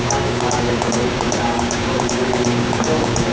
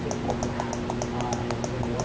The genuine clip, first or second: second